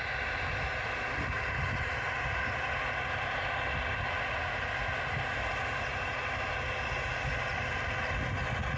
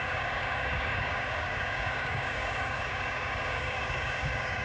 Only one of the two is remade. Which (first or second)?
second